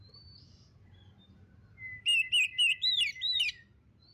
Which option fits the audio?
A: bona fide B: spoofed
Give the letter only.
B